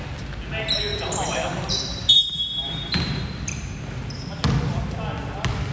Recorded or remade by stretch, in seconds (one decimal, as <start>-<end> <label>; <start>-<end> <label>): 0.0-0.9 recorded; 0.9-4.2 remade; 4.2-5.7 recorded